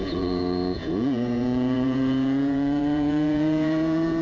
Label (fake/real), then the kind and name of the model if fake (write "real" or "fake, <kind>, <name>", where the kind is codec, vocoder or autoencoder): fake, vocoder, Vocos